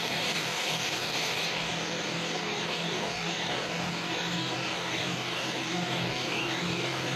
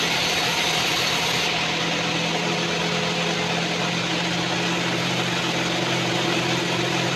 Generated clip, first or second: first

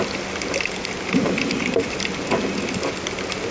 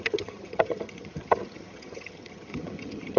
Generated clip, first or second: second